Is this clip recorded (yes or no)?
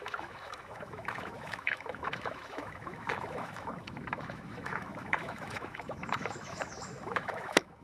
no